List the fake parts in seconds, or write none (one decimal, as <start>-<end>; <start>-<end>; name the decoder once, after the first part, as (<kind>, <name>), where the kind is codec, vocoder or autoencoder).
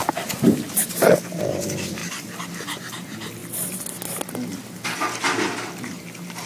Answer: none